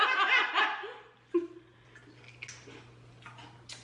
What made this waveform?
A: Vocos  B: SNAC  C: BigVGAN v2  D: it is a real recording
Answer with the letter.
D